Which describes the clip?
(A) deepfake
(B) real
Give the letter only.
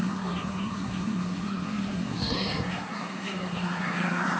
A